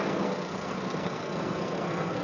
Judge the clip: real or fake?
fake